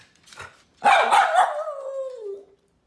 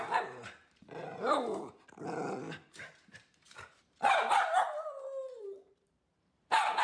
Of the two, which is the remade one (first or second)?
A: second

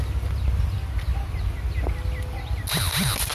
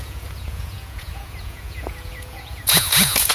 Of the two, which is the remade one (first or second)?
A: second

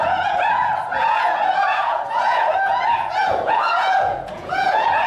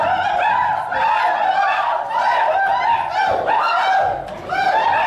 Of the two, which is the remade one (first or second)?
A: first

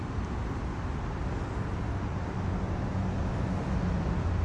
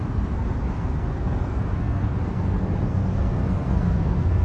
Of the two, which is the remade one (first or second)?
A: second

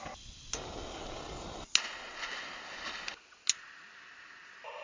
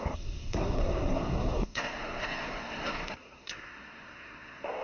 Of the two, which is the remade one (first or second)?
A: second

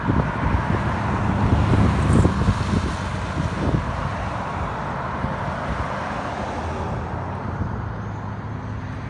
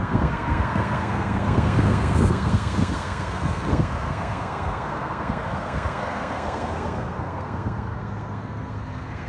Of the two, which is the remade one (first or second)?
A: second